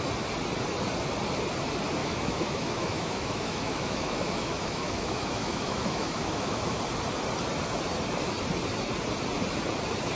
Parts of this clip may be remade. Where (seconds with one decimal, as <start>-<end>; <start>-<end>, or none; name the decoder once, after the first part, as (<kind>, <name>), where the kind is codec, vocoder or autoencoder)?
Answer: 2.0-6.8 (autoencoder, DAC-VAE)